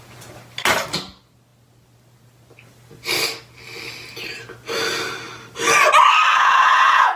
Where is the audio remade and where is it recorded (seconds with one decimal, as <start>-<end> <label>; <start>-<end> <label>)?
0.0-6.3 recorded; 6.3-7.2 remade